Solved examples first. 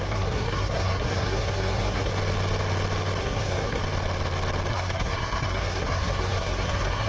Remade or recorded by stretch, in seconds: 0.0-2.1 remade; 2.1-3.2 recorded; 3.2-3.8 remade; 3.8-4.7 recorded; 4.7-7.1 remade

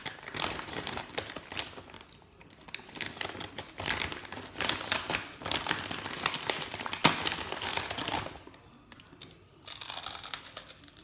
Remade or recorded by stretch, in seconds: 0.0-1.1 remade; 1.1-11.0 recorded

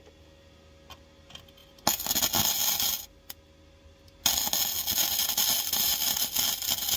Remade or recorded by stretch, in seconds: 0.0-7.0 recorded

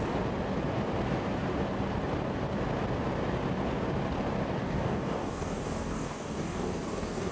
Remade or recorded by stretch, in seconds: 0.0-4.6 recorded; 4.6-7.3 remade